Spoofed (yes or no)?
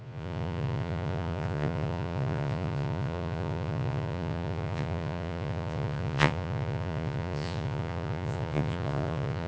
yes